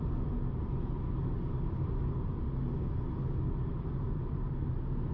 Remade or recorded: recorded